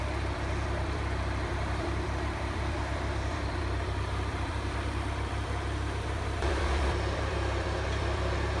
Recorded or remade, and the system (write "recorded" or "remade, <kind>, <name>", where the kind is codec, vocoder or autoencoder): remade, vocoder, BigVGAN v2